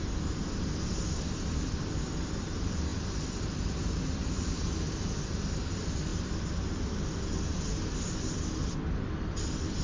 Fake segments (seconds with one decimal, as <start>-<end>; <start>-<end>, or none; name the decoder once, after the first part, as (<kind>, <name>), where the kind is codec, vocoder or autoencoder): none